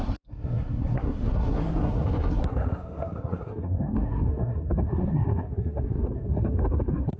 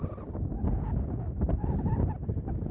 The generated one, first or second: first